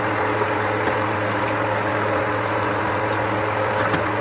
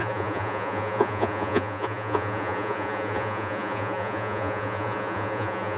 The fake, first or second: second